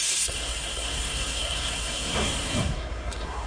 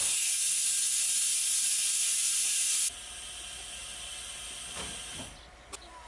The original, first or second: second